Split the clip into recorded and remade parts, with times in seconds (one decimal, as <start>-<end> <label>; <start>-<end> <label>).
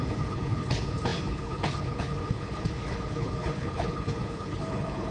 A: 0.0-5.1 remade